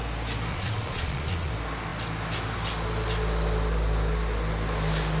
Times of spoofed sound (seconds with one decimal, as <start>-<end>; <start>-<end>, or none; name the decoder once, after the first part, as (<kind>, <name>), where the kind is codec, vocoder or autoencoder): 0.5-1.5 (vocoder, Vocos)